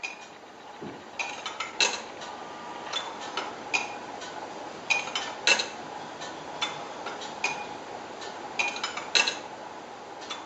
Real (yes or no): yes